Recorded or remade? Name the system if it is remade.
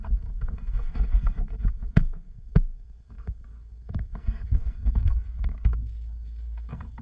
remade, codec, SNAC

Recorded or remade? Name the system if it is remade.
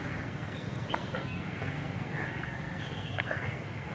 remade, codec, SNAC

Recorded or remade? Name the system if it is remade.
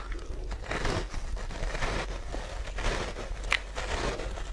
recorded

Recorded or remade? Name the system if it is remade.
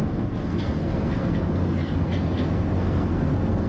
remade, codec, SNAC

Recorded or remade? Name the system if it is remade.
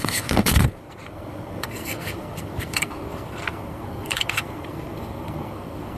remade, codec, SNAC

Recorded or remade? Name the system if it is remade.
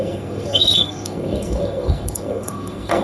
remade, codec, SNAC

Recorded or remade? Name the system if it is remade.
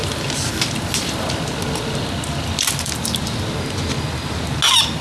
recorded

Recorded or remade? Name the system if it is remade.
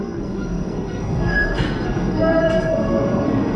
remade, codec, SNAC